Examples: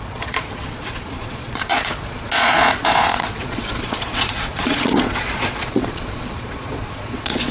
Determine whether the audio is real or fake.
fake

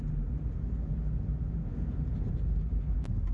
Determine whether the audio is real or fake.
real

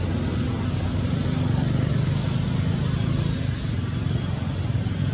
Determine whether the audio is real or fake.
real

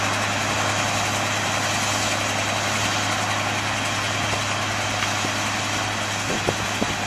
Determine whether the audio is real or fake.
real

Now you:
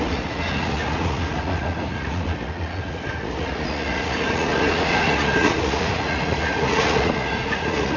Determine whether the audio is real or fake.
fake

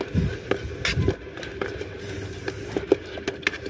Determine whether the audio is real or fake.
real